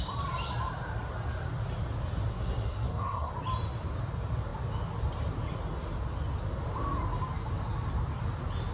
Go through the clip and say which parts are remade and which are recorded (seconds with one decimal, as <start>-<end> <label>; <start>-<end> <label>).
0.0-2.3 recorded; 2.3-3.3 remade; 3.3-8.7 recorded